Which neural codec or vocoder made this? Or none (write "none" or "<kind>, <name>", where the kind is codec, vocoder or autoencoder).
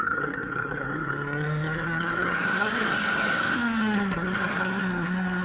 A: codec, SNAC